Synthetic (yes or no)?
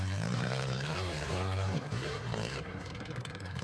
yes